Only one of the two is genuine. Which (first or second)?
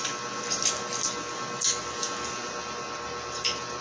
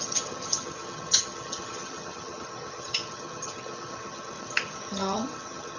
first